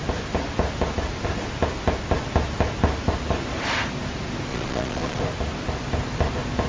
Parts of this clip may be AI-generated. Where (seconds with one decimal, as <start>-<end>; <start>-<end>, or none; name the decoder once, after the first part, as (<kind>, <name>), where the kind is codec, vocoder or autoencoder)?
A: 4.5-5.2 (vocoder, Vocos)